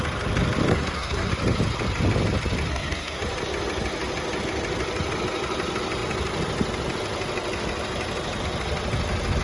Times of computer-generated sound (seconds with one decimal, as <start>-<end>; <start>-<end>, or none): 0.7-1.3; 2.7-3.2